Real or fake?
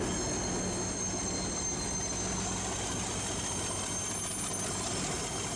real